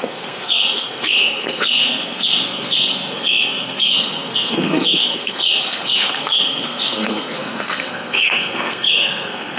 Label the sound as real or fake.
fake